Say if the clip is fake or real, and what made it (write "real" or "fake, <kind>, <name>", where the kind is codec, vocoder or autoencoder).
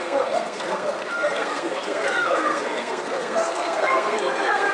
fake, codec, SNAC